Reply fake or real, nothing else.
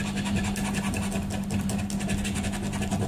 real